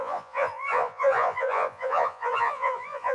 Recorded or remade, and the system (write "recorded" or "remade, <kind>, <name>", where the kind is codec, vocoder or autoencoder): remade, vocoder, Vocos